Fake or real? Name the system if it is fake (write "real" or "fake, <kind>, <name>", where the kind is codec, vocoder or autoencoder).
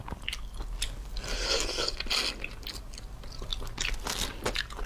real